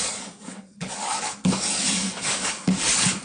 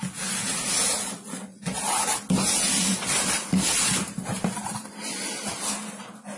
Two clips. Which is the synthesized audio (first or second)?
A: first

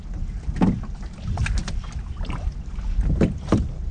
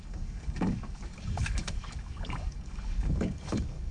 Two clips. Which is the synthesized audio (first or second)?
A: second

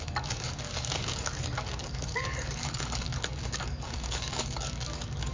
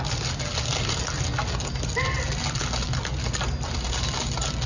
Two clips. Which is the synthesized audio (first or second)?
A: first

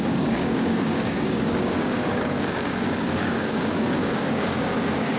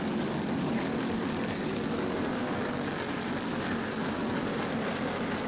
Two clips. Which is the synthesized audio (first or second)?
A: first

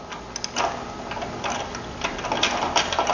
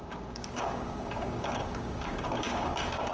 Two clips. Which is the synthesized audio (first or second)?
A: second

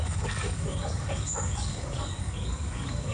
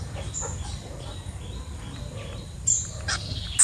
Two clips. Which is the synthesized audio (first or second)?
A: first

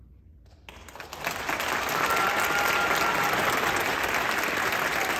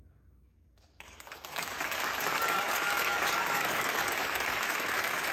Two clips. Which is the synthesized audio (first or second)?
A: second